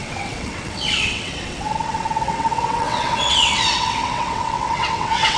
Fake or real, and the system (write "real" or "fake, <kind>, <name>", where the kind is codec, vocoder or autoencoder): fake, vocoder, WaveNeXt